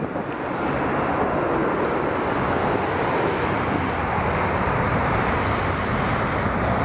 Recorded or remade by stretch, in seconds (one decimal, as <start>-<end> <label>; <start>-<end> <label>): 0.0-1.6 recorded; 1.6-5.7 remade; 5.7-6.8 recorded